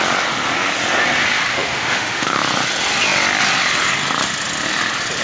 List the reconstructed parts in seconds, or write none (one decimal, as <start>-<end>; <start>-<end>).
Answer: 1.5-2.4